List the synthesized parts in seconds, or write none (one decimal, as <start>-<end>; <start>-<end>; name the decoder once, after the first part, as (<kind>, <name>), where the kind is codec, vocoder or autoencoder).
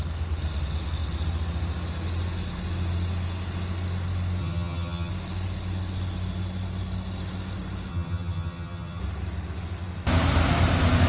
4.4-5.1 (vocoder, HiFi-GAN); 7.9-9.0